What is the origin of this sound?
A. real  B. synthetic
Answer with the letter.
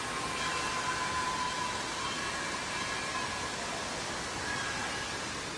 A